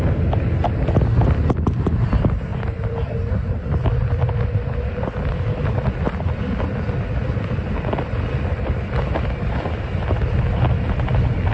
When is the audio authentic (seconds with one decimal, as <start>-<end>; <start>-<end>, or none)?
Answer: 0.0-11.5